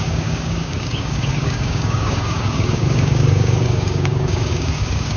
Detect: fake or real fake